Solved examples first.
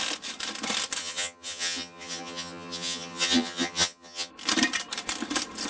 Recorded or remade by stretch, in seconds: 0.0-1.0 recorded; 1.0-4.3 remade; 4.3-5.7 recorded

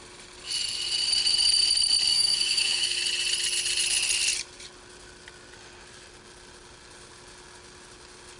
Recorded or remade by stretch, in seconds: 0.0-2.1 recorded; 2.1-3.0 remade; 3.0-8.4 recorded